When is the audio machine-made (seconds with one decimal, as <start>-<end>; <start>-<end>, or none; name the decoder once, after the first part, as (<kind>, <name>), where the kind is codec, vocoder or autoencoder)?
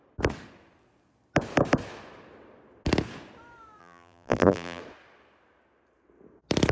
3.8-4.8 (vocoder, BigVGAN v2)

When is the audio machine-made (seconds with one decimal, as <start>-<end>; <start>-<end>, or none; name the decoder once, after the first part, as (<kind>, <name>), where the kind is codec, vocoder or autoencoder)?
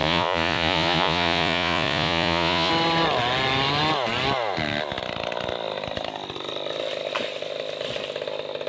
0.0-2.7 (vocoder, Vocos)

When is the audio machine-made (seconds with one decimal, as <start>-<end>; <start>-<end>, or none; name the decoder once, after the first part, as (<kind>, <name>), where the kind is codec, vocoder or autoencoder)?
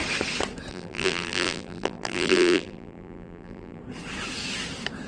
0.7-3.8 (vocoder, BigVGAN v2)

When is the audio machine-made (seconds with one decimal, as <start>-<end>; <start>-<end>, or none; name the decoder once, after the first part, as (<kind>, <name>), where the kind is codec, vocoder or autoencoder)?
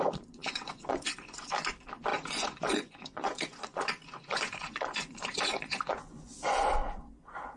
0.4-1.5 (vocoder, Vocos); 2.1-6.6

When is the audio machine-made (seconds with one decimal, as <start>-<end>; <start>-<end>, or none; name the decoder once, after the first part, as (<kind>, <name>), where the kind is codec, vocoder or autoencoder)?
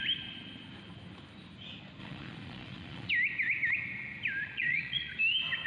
2.0-3.1 (vocoder, Vocos); 4.4-5.1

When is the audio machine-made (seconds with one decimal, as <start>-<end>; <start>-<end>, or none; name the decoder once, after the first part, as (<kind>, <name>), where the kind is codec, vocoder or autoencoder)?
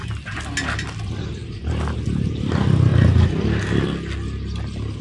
none